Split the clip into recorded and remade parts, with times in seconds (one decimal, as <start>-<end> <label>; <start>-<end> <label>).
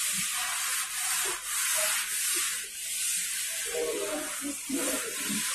0.0-0.5 remade; 0.5-3.4 recorded; 3.4-5.5 remade